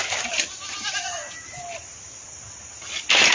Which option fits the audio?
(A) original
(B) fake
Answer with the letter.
A